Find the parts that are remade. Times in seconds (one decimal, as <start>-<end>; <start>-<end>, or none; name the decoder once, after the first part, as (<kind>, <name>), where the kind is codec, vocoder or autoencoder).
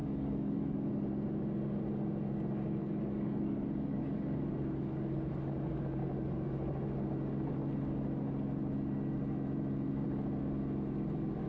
0.0-0.9 (codec, DAC); 2.8-5.2